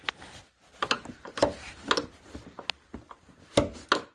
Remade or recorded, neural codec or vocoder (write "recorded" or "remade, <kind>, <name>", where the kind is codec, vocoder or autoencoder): recorded